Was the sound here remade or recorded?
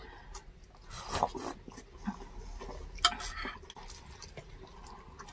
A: recorded